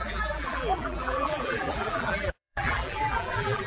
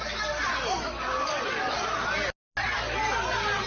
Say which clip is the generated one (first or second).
first